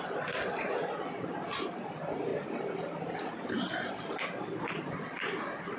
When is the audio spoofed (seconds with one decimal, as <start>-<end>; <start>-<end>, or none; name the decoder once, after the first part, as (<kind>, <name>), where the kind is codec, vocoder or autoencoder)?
2.3-5.8 (vocoder, BigVGAN v2)